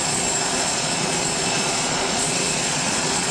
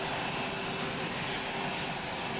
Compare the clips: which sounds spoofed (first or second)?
first